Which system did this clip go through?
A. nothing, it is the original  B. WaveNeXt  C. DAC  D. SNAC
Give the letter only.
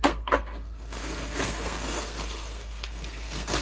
D